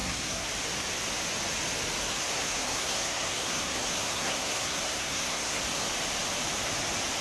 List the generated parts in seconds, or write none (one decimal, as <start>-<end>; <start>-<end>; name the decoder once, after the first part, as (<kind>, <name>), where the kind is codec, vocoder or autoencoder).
0.0-0.5 (codec, SNAC); 2.1-5.6